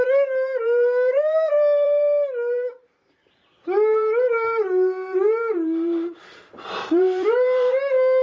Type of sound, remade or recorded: remade